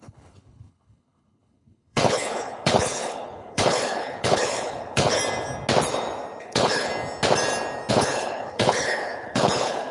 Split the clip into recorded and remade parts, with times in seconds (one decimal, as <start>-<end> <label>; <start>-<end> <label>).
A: 0.0-5.2 remade; 5.2-6.4 recorded; 6.4-6.9 remade; 6.9-7.9 recorded; 7.9-9.9 remade